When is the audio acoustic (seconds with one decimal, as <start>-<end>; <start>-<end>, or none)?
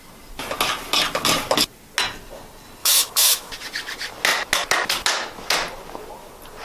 0.0-2.8; 3.5-6.6